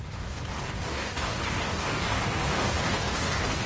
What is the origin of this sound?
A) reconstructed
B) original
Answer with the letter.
A